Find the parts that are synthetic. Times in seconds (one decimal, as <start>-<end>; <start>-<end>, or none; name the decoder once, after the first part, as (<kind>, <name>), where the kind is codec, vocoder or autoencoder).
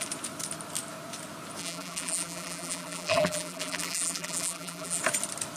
1.6-5.0 (vocoder, BigVGAN v2)